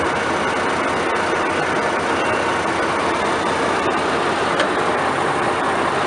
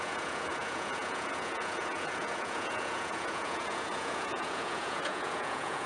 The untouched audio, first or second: first